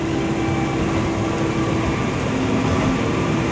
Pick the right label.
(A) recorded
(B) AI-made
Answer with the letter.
A